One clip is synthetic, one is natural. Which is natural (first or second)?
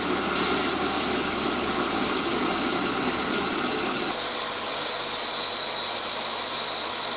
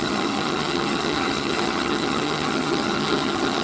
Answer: first